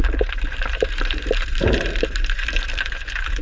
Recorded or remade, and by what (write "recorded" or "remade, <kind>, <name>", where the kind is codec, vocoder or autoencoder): remade, vocoder, BigVGAN v2